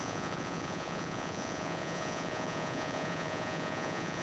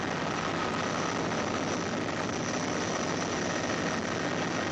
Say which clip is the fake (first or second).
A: first